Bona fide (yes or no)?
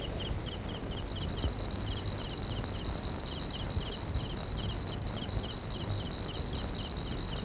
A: yes